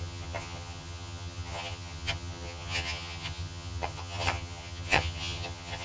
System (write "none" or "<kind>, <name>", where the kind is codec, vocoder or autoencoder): vocoder, HiFi-GAN